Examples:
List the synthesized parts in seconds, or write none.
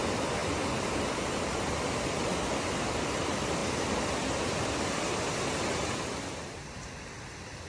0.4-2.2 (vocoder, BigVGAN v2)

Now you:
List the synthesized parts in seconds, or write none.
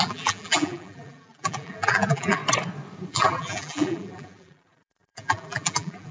0.0-2.4 (vocoder, BigVGAN v2); 3.1-6.1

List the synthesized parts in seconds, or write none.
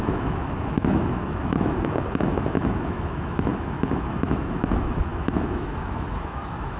0.0-6.8 (autoencoder, DAC-VAE)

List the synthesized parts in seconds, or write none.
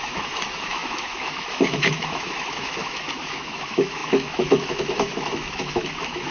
0.0-6.3 (autoencoder, DAC-VAE)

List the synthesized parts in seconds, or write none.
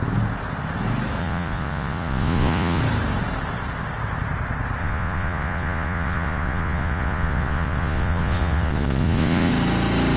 1.2-2.8 (vocoder, Vocos); 4.8-9.5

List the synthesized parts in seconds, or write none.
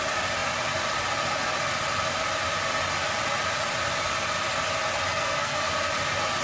5.1-5.7 (codec, SNAC)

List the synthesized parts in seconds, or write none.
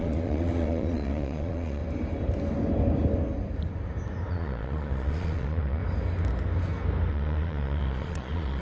0.0-1.8 (vocoder, Vocos); 4.3-5.8; 7.1-8.6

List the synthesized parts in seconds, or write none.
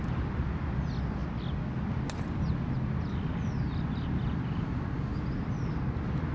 none